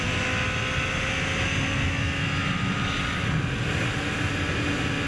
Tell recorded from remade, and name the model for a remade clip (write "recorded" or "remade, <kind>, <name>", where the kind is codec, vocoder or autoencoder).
recorded